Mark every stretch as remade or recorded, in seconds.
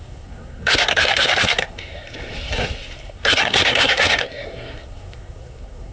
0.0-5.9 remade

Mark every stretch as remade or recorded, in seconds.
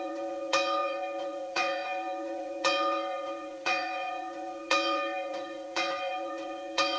0.0-7.0 remade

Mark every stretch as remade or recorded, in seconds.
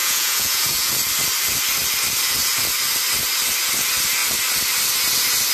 0.0-0.9 remade; 0.9-5.5 recorded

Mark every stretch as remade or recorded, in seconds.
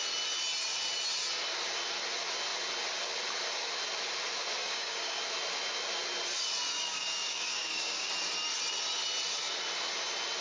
0.0-4.6 recorded; 4.6-5.2 remade; 5.2-6.7 recorded; 6.7-8.1 remade; 8.1-10.4 recorded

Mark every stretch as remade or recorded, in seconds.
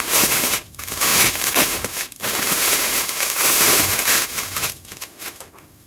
0.0-5.9 remade